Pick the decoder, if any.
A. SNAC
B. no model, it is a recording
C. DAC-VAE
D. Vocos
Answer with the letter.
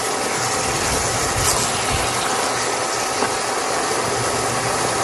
B